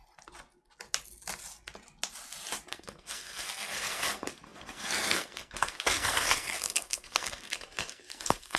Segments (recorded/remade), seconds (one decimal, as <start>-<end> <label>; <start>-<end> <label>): 0.0-2.7 recorded; 2.7-8.6 remade

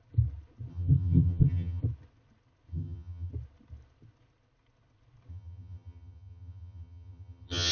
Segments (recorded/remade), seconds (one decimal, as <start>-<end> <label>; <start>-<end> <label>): 0.0-0.7 recorded; 0.7-1.8 remade; 1.8-2.7 recorded; 2.7-3.3 remade; 3.3-5.3 recorded; 5.3-7.7 remade

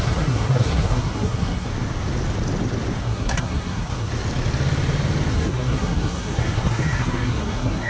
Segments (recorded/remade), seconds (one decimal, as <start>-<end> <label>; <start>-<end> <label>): 0.0-1.7 remade; 1.7-3.0 recorded; 3.0-4.1 remade; 4.1-5.3 recorded; 5.3-7.9 remade

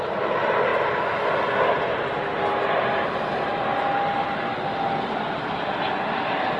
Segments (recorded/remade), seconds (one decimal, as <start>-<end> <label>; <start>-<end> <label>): 0.0-6.6 recorded